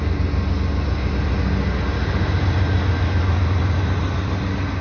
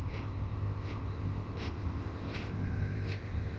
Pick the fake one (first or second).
second